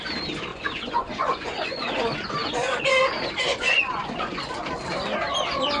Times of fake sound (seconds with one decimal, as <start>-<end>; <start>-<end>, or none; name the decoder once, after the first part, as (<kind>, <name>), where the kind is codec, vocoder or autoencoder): 0.5-1.9 (vocoder, Vocos); 3.5-4.4